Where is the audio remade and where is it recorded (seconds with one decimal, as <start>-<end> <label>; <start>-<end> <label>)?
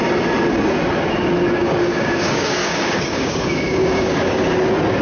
0.0-1.4 recorded; 1.4-4.4 remade; 4.4-5.0 recorded